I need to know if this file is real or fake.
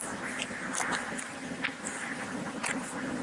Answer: real